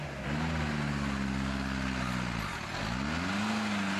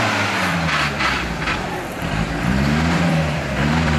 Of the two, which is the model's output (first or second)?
second